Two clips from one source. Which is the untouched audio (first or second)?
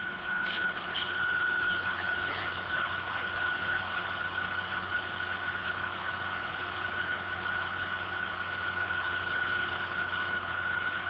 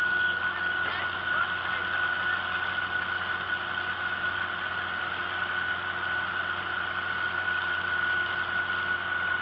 second